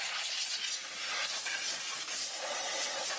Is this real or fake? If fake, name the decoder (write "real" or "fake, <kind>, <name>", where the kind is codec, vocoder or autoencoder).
real